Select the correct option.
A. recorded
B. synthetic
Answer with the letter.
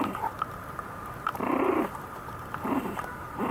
B